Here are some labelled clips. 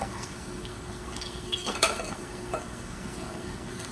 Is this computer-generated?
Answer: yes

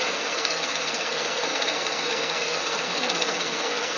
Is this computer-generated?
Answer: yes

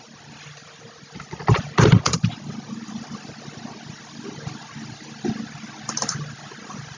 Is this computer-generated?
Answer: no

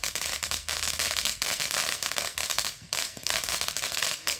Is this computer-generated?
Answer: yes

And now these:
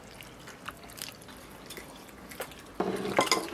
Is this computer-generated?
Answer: no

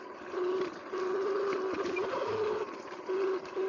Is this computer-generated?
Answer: no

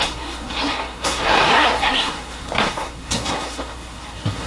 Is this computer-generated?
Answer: yes